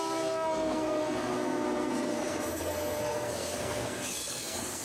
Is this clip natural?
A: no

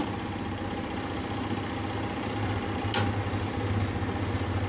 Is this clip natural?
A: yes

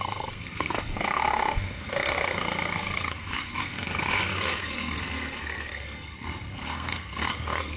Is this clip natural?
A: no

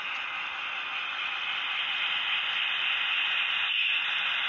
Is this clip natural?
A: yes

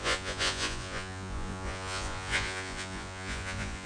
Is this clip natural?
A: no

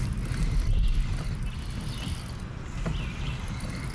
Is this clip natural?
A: yes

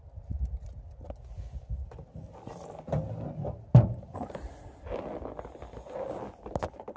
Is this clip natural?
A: yes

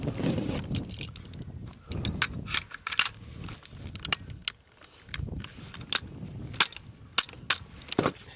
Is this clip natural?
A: yes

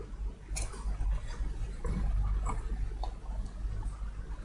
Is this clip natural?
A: yes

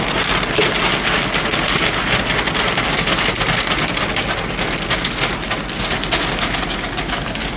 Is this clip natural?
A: yes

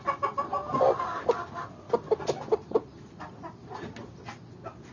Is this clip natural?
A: yes